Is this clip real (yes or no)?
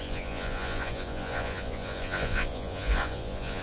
no